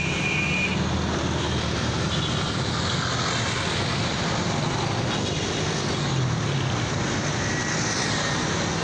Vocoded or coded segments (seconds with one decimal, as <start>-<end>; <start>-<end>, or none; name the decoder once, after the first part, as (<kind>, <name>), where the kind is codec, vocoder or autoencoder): none